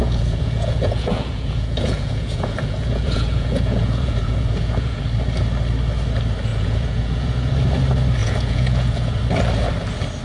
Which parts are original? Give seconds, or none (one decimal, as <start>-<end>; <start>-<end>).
5.0-6.5; 7.5-8.2; 9.2-10.2